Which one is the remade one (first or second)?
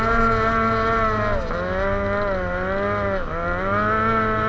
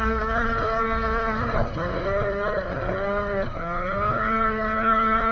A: second